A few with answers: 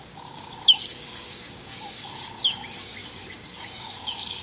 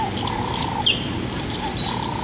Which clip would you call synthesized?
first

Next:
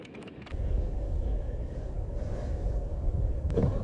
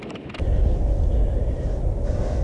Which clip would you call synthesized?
first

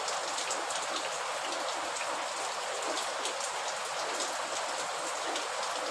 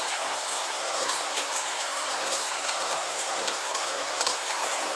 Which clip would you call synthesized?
second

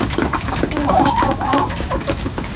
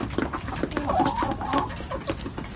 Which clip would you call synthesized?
first